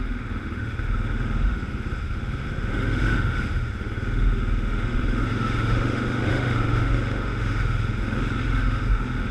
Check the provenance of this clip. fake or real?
fake